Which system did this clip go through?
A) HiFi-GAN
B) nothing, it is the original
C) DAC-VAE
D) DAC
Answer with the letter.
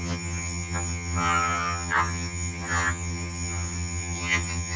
A